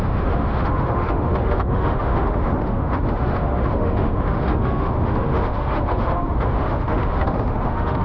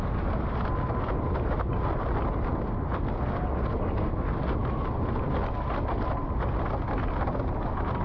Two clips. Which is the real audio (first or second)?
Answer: second